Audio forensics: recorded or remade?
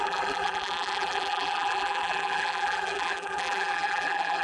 remade